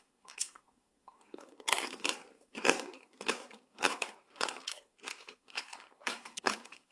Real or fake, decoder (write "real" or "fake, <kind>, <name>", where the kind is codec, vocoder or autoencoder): fake, codec, SNAC